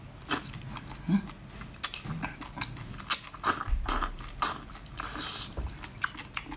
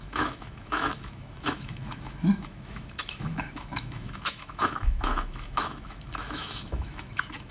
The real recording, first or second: first